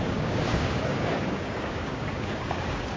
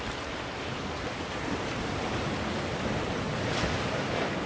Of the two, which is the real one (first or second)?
second